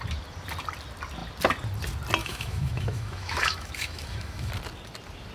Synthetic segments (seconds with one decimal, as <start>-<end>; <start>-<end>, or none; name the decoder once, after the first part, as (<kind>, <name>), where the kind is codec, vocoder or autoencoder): 2.2-4.5 (autoencoder, DAC-VAE)